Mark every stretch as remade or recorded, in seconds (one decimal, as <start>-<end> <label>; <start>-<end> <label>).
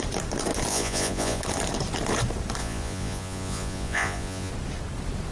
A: 0.0-0.7 recorded; 0.7-1.4 remade; 1.4-2.6 recorded; 2.6-4.5 remade; 4.5-5.3 recorded